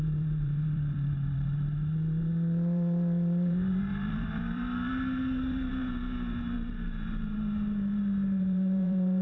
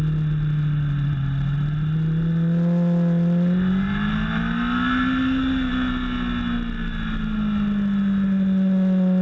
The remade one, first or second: first